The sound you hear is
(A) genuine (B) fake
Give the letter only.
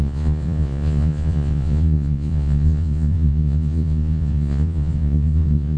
B